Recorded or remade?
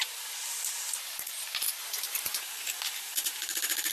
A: remade